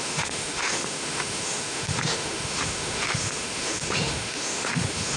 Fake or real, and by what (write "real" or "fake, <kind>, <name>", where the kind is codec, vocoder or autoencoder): fake, autoencoder, DAC-VAE